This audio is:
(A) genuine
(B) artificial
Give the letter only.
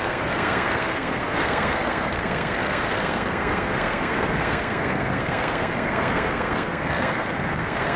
B